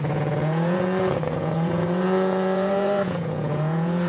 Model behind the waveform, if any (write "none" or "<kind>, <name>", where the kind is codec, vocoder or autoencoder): vocoder, Vocos